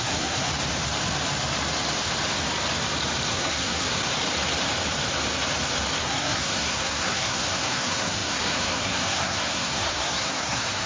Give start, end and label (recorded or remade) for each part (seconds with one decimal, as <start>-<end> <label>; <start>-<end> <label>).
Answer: 0.0-0.5 remade; 0.5-3.3 recorded; 3.3-4.0 remade; 4.0-6.0 recorded; 6.0-10.9 remade